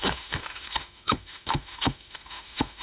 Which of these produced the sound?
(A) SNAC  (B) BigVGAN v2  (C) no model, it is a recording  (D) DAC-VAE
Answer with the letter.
D